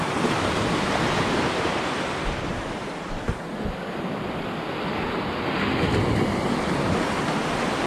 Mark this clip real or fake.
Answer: real